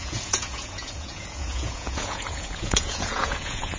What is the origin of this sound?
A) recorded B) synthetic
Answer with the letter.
B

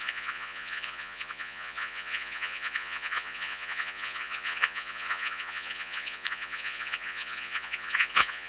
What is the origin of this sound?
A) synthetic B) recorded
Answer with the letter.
A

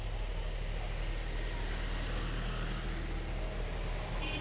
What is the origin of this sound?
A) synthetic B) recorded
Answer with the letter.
B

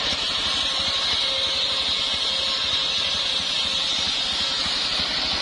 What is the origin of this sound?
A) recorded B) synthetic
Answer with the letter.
A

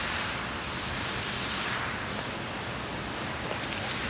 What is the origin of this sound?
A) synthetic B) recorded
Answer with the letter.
B